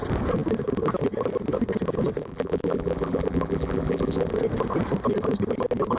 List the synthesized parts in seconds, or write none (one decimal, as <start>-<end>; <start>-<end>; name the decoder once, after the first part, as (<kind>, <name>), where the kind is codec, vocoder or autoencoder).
2.3-4.3 (vocoder, BigVGAN v2)

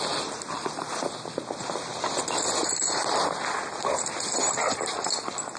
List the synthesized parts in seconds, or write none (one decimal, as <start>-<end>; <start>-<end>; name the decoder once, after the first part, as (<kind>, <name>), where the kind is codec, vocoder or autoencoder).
none